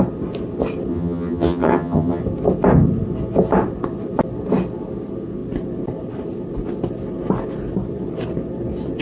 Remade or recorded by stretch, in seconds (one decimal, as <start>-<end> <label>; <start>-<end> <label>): 0.0-0.9 recorded; 0.9-2.2 remade; 2.2-9.0 recorded